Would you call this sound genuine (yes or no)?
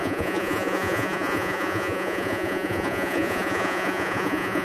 no